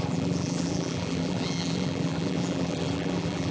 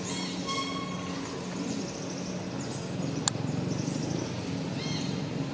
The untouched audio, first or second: second